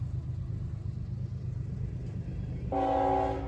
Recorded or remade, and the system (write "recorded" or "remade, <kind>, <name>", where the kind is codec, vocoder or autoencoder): recorded